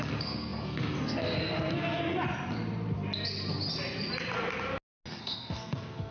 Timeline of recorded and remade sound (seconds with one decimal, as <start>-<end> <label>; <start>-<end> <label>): 0.0-2.0 remade; 2.0-5.1 recorded; 5.1-6.1 remade